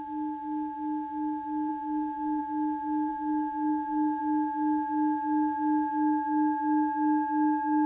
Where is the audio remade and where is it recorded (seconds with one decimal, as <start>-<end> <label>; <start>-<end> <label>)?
0.0-1.7 recorded; 1.7-2.4 remade; 2.4-3.1 recorded; 3.1-4.2 remade; 4.2-7.9 recorded